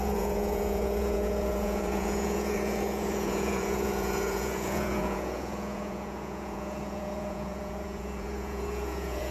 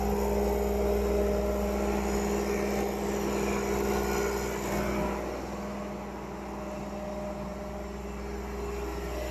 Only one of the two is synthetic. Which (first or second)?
first